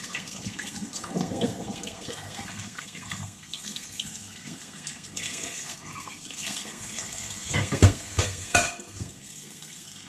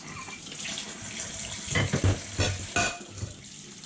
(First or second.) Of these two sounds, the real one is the second